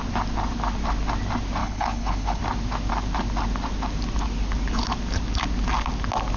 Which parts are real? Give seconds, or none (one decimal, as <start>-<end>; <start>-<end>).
0.0-1.6; 2.4-6.4